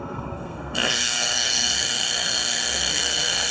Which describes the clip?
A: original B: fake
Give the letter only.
B